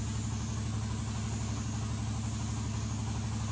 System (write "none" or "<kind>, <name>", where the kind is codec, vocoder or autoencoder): none